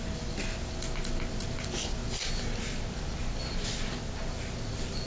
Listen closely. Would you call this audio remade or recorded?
recorded